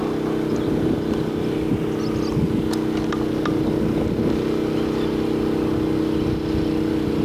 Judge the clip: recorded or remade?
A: recorded